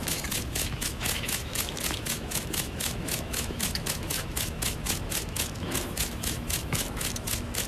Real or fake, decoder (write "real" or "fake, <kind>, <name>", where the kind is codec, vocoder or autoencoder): fake, autoencoder, DAC-VAE